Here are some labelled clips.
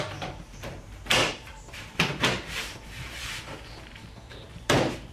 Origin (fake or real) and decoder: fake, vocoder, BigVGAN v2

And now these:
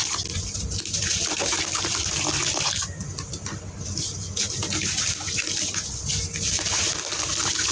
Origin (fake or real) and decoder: real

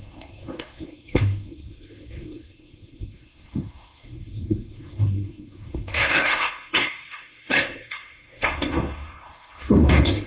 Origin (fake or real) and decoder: fake, codec, SNAC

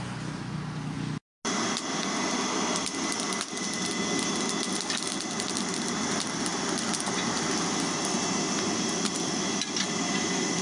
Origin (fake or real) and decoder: real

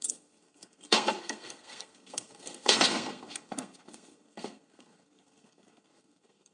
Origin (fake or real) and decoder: fake, codec, SNAC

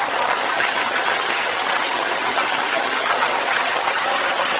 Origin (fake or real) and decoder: fake, vocoder, HiFi-GAN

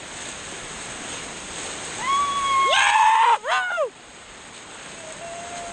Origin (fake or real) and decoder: real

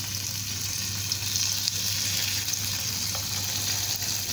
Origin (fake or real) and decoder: real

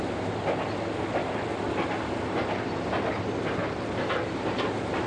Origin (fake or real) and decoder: real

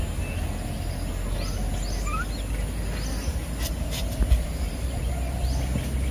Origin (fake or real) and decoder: real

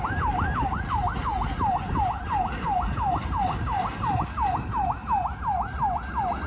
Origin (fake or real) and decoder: real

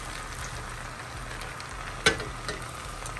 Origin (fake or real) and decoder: real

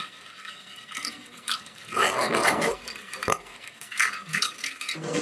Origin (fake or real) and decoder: fake, codec, SNAC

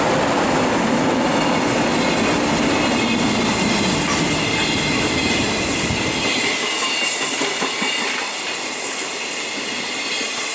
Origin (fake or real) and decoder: real